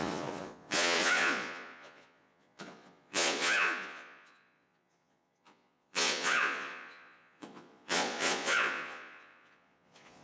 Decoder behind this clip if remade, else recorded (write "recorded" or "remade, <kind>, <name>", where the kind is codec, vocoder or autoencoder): remade, vocoder, Vocos